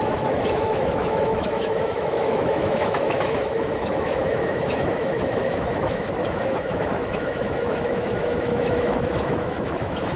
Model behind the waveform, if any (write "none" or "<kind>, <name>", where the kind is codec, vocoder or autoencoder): autoencoder, DAC-VAE